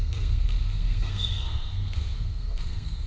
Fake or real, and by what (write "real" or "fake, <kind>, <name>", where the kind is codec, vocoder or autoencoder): fake, codec, SNAC